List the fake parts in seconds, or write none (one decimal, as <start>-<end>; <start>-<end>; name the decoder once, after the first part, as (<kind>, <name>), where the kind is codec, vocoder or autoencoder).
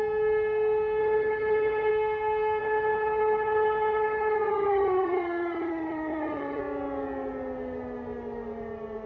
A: 1.0-1.9 (vocoder, HiFi-GAN); 2.6-6.6